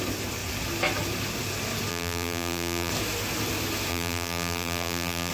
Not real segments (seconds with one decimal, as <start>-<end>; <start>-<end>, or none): 1.9-2.9; 3.9-5.3